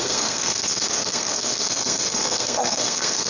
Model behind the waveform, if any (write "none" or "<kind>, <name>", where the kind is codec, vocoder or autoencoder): codec, SNAC